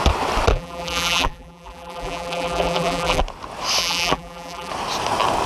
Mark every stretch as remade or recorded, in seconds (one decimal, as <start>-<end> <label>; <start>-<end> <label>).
0.0-0.5 recorded; 0.5-3.2 remade; 3.2-3.8 recorded; 3.8-4.7 remade; 4.7-5.5 recorded